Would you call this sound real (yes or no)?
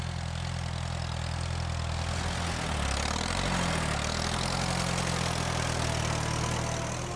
yes